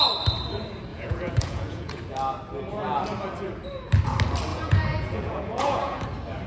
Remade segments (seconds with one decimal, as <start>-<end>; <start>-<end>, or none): 0.9-2.0; 4.5-6.0